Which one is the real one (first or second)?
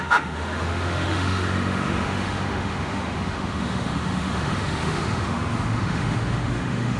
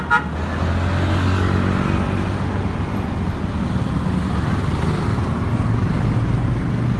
second